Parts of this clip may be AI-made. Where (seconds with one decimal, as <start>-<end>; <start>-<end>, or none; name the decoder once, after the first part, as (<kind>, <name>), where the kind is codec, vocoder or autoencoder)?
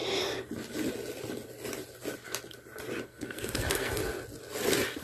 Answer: 3.0-4.0 (codec, SNAC)